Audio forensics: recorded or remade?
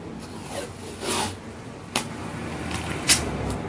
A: recorded